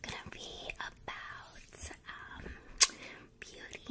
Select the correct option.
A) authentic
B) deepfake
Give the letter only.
A